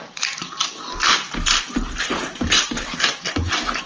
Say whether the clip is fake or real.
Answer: fake